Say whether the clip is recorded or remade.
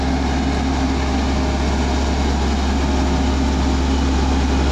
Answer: recorded